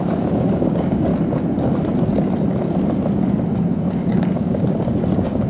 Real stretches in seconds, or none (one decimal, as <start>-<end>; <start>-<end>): 1.1-3.8

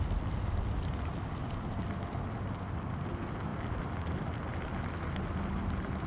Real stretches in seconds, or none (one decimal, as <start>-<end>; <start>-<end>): 0.0-6.1

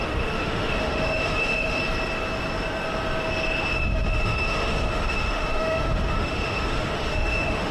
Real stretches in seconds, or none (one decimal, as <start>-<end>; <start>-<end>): 1.8-3.7

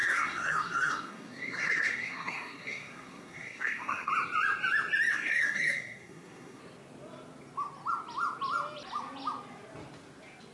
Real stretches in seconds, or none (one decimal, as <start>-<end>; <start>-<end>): 4.1-5.1; 6.6-10.5

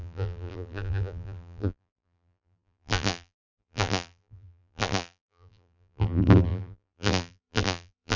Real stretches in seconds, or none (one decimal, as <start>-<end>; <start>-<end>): none

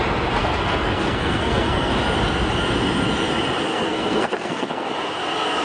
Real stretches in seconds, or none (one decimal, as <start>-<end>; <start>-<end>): 0.0-0.4; 1.9-3.7; 4.9-5.6

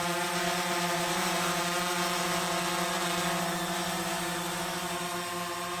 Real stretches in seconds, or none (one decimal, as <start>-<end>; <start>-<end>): 1.6-5.8

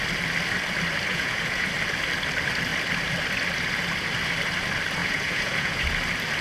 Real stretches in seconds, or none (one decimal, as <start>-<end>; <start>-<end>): 0.0-1.1; 1.7-5.0; 5.8-6.4